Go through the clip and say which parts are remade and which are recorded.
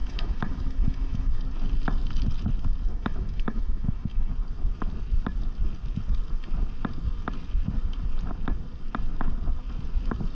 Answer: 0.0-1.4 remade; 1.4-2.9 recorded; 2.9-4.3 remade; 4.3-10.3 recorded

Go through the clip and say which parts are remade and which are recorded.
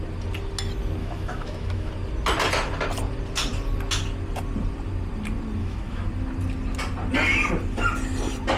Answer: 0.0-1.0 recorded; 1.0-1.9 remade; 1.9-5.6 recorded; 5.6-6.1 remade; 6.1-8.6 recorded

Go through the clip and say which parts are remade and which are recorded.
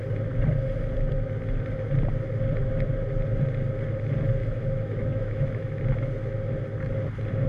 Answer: 0.0-4.4 recorded; 4.4-5.8 remade; 5.8-7.5 recorded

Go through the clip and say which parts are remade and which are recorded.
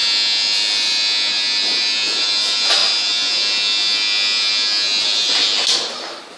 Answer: 0.0-6.4 recorded